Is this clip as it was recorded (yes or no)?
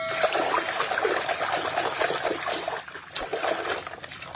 yes